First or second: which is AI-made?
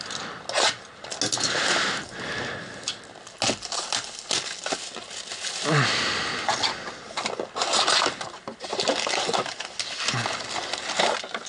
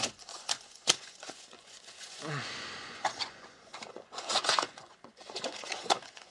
second